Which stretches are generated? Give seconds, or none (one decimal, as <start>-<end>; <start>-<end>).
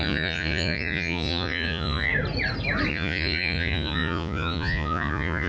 0.0-2.1; 2.9-5.5